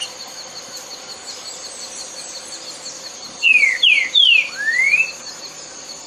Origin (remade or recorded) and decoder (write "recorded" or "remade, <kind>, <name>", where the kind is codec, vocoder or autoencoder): remade, vocoder, BigVGAN v2